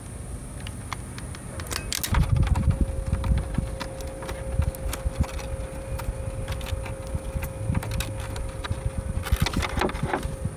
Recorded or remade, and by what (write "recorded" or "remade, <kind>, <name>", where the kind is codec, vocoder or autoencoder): recorded